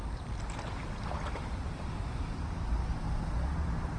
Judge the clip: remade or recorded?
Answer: recorded